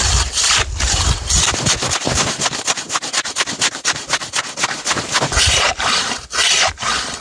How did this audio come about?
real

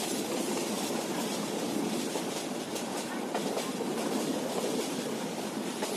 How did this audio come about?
fake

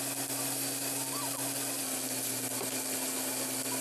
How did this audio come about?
real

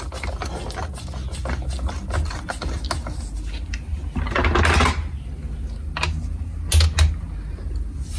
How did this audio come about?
real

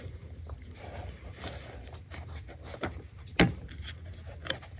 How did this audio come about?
fake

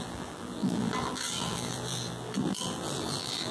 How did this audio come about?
fake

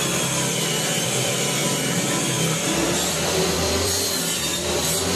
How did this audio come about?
fake